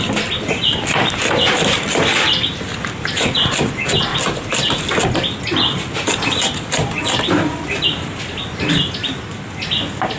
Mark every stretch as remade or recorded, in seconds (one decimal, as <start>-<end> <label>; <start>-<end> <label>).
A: 0.0-10.2 recorded